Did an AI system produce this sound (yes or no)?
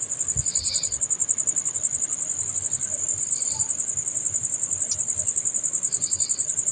no